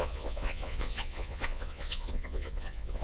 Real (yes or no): no